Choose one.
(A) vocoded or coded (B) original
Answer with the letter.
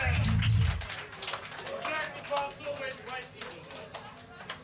B